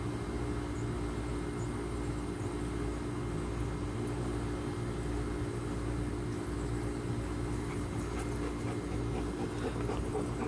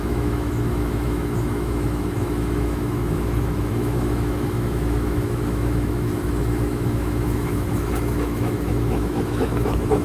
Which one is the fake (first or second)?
second